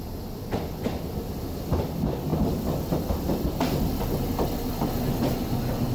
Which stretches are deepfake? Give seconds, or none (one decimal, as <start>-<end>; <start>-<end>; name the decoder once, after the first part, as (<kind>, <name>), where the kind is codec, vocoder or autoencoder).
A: none